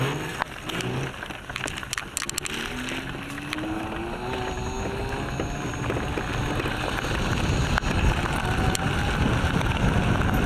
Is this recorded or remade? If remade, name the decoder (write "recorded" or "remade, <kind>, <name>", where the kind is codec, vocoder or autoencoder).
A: recorded